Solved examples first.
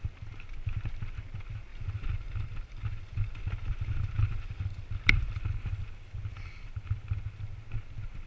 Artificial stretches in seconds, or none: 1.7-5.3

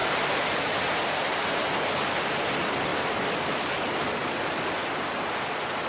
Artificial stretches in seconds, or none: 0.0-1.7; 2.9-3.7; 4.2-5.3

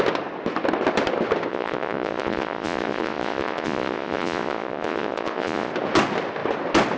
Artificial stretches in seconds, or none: 1.5-5.7

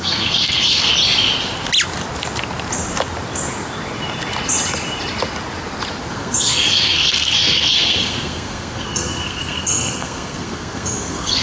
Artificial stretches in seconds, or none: 0.0-0.9; 6.1-11.4